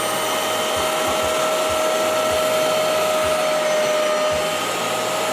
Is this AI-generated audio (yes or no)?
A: no